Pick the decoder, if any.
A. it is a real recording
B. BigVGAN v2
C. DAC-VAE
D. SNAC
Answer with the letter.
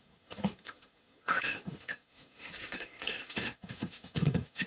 D